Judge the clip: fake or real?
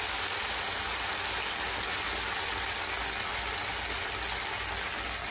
real